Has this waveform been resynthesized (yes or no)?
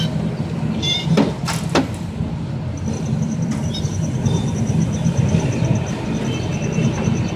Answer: no